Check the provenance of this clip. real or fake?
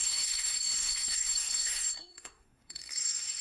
fake